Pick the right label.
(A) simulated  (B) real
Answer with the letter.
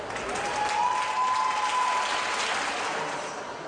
B